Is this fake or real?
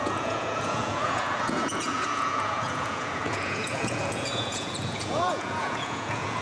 fake